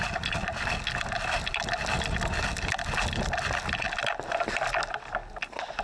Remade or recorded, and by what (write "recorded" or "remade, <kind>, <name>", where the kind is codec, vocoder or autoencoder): recorded